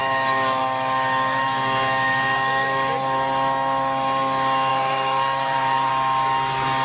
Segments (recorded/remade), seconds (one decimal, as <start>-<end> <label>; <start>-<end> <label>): 0.0-4.7 recorded; 4.7-5.9 remade; 5.9-6.8 recorded